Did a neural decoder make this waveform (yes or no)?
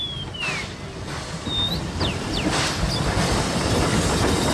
no